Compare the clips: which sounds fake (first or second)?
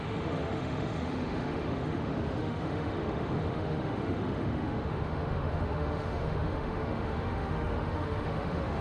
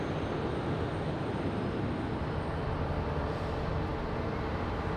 first